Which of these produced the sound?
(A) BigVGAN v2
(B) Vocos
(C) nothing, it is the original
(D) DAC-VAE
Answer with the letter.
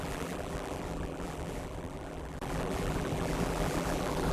A